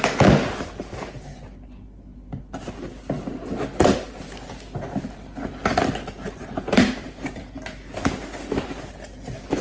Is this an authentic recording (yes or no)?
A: yes